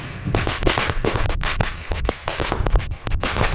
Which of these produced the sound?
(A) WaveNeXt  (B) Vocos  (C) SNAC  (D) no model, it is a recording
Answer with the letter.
C